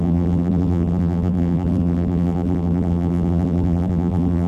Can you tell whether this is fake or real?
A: fake